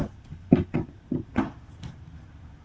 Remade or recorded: recorded